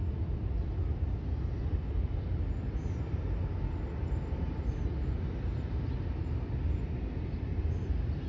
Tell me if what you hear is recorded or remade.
recorded